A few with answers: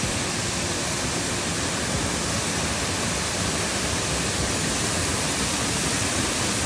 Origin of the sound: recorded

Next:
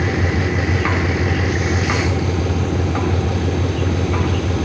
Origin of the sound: recorded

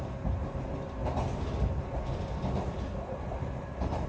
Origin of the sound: recorded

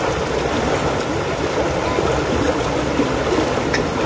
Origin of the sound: recorded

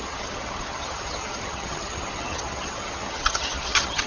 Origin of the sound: remade